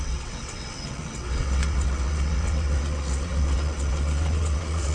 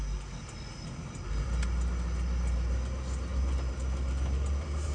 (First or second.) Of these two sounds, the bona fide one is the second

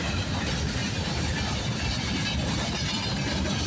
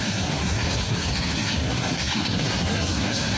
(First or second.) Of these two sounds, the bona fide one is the first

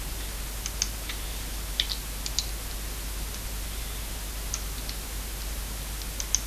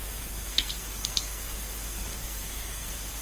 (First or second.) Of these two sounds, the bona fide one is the first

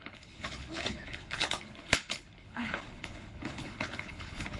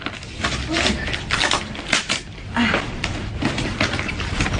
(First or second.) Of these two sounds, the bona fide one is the second